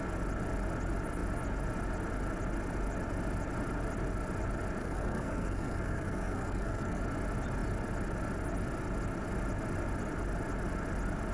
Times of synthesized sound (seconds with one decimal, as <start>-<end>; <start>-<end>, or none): 4.8-7.0